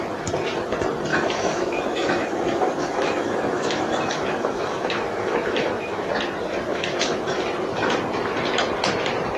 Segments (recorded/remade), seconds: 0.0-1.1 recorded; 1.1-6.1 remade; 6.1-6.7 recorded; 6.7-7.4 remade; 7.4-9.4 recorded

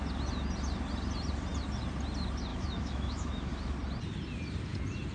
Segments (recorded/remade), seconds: 0.0-2.5 recorded; 2.5-3.5 remade; 3.5-5.1 recorded

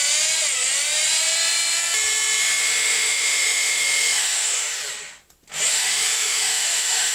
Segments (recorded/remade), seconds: 0.0-2.4 recorded; 2.4-4.8 remade; 4.8-5.7 recorded; 5.7-7.1 remade

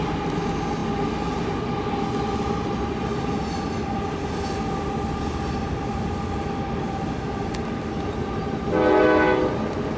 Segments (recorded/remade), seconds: 0.0-10.0 recorded

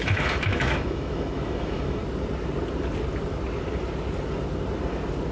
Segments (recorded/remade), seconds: 0.0-2.0 remade; 2.0-5.3 recorded